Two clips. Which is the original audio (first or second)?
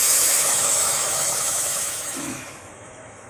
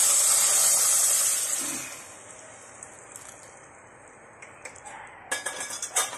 second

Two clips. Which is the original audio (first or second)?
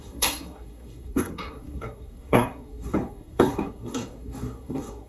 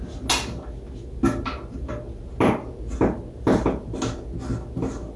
second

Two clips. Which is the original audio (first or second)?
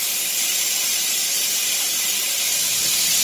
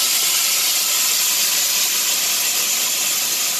second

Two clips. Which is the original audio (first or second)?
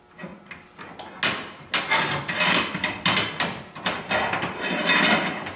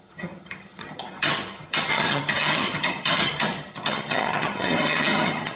first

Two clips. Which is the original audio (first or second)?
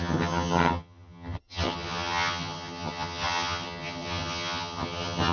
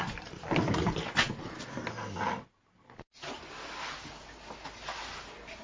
second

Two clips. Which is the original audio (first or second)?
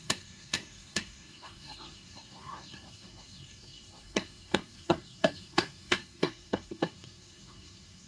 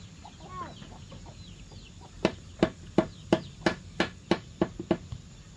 second